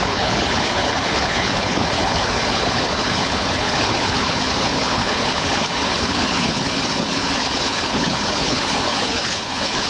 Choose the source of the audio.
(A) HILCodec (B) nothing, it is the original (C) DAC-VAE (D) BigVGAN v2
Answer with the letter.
A